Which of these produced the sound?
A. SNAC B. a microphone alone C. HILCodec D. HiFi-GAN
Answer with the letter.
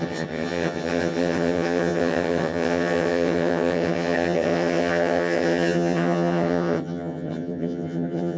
D